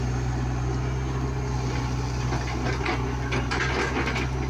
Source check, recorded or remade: recorded